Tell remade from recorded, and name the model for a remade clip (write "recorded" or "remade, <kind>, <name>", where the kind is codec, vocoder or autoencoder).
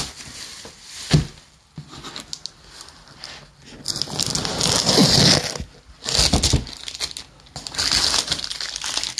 recorded